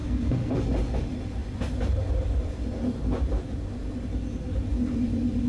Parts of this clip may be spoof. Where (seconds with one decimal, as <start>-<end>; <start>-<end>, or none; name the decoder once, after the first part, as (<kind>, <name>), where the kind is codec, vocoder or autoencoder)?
0.0-0.6 (codec, SNAC)